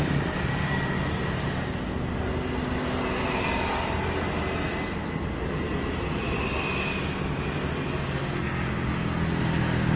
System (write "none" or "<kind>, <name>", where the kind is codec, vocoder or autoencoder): none